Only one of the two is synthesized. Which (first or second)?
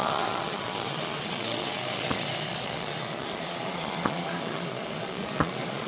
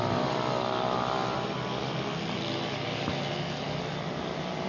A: first